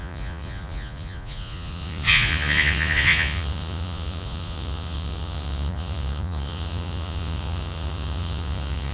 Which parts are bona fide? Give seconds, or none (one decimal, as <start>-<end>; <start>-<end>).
none